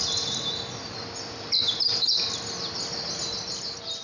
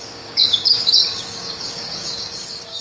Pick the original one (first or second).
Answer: first